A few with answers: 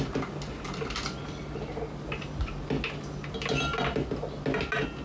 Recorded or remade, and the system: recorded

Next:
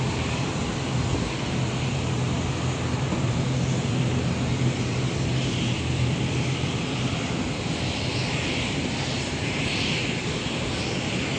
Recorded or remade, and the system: remade, vocoder, BigVGAN v2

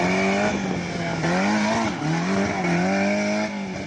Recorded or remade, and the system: recorded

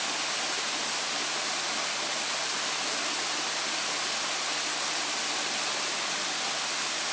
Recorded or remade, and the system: recorded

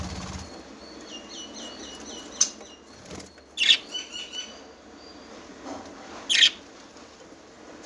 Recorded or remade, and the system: recorded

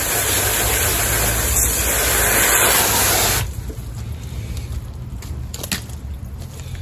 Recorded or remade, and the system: recorded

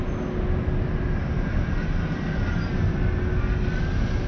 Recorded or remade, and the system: recorded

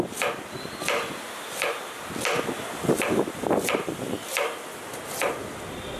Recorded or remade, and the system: recorded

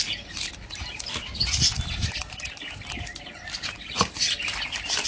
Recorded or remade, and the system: recorded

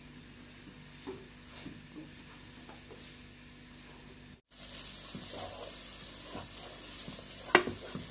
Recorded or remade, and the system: recorded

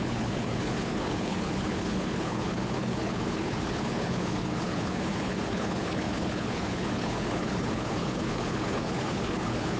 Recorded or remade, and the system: remade, codec, HILCodec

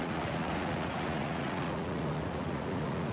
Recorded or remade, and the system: remade, vocoder, Vocos